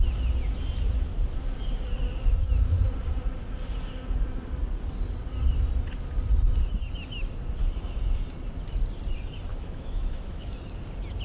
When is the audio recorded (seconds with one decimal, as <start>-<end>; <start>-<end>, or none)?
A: 0.0-9.5; 10.5-11.2